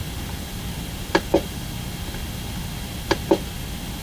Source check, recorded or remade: recorded